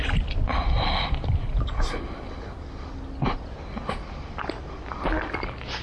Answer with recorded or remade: recorded